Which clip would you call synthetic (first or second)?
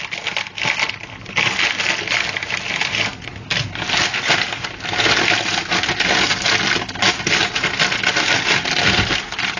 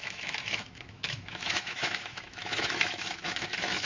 second